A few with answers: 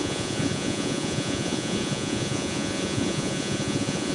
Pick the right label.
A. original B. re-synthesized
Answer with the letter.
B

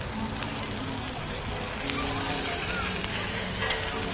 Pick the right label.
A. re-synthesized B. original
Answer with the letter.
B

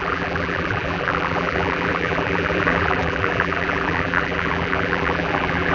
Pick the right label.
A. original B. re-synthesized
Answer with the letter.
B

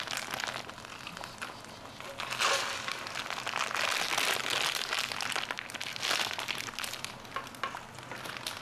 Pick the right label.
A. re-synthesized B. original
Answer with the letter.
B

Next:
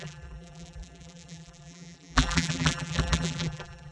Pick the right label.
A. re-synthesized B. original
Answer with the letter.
A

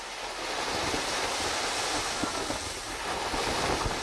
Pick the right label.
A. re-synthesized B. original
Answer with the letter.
B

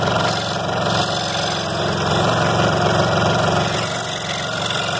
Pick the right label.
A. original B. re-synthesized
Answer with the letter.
A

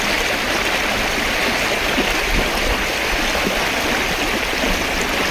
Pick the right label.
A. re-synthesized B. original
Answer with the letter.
B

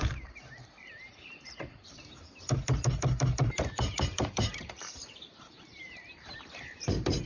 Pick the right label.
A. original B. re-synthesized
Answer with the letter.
B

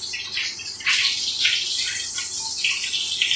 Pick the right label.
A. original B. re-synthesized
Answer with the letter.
A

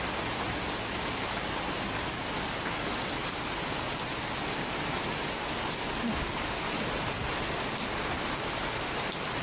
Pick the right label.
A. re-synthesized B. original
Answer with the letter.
B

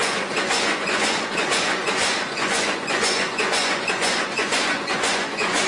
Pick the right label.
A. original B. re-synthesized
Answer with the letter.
B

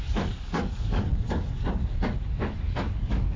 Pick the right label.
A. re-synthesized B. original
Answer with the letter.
A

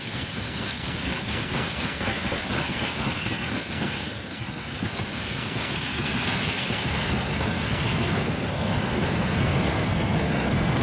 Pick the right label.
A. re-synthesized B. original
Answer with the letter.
A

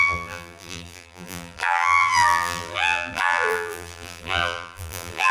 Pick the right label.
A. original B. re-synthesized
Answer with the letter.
B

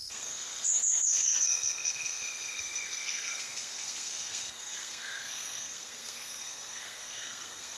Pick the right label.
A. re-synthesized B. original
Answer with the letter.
A